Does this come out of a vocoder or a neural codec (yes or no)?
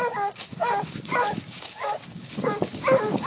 yes